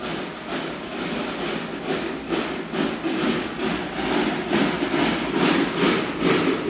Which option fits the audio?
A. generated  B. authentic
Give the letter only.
B